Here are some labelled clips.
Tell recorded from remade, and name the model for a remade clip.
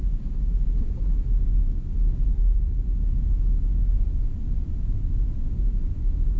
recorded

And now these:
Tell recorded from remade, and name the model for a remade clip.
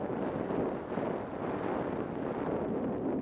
recorded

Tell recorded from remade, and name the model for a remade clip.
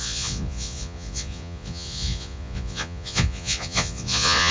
remade, vocoder, Vocos